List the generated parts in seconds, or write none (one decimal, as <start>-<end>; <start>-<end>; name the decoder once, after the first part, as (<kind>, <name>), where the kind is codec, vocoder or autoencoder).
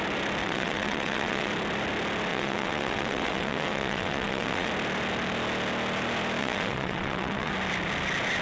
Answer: 0.4-1.5 (vocoder, WaveNeXt); 2.3-4.7; 6.4-7.5